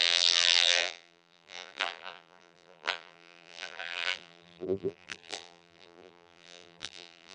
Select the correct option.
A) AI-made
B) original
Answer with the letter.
A